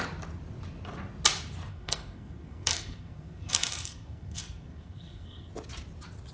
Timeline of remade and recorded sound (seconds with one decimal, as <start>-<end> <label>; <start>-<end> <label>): 0.0-1.7 recorded; 1.7-5.5 remade; 5.5-6.3 recorded